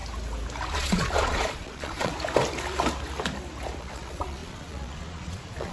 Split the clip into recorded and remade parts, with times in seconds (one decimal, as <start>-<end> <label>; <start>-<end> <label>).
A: 0.0-0.7 recorded; 0.7-2.1 remade; 2.1-3.8 recorded; 3.8-5.7 remade